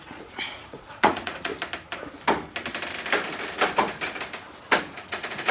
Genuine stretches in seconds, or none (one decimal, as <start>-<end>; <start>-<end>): 1.5-4.8